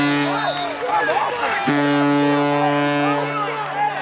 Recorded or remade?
recorded